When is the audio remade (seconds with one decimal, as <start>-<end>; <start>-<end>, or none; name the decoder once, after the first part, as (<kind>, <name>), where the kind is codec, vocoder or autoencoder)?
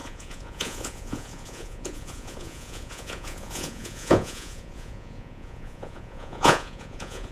0.0-7.3 (vocoder, Vocos)